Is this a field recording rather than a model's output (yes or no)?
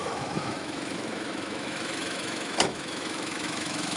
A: no